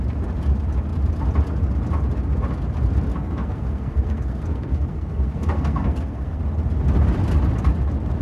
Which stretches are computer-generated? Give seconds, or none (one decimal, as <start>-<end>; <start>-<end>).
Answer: 3.1-6.4